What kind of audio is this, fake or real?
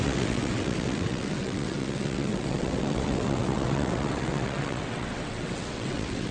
fake